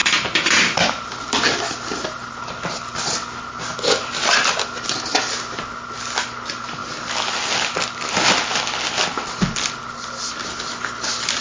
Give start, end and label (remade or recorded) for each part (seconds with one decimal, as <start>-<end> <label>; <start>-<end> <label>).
0.0-11.4 recorded